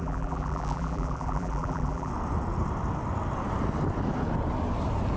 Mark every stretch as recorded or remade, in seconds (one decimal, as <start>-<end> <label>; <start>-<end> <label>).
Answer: 0.0-2.1 remade; 2.1-5.2 recorded